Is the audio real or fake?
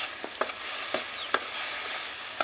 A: real